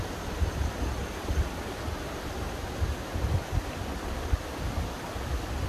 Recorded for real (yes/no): yes